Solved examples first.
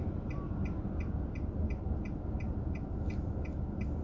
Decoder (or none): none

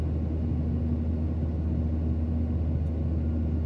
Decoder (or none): none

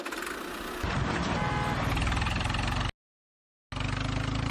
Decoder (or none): none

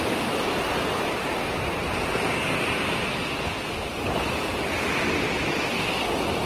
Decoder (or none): none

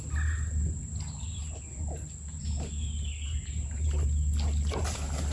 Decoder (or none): none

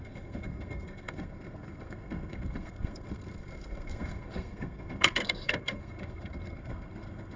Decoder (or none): codec, SNAC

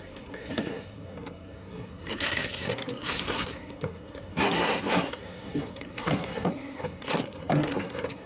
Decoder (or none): codec, SNAC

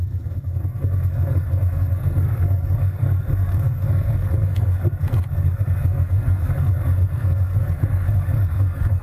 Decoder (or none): codec, SNAC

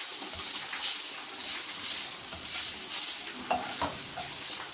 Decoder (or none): none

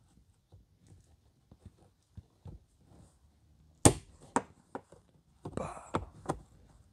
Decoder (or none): none